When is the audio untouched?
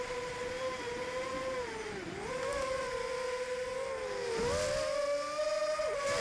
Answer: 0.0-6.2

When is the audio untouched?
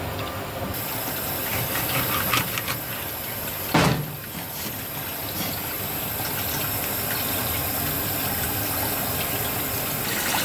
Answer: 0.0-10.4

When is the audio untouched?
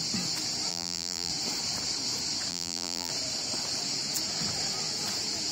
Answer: 0.0-0.7; 1.3-2.5; 3.1-5.5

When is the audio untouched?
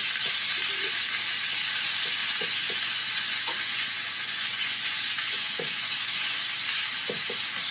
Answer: 0.0-2.2; 6.4-7.7